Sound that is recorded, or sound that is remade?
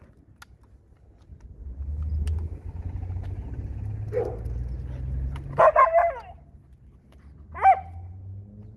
recorded